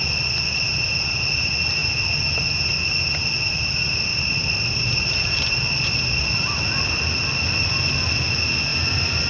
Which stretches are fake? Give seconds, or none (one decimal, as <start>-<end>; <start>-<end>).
4.1-6.0